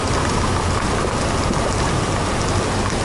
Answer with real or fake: real